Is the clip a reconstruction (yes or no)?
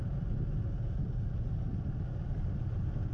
no